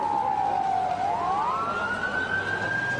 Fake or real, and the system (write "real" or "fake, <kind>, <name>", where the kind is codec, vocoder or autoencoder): real